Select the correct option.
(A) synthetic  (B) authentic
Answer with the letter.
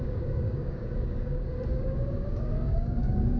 A